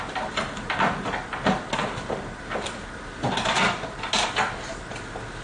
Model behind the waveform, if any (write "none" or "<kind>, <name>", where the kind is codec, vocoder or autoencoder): none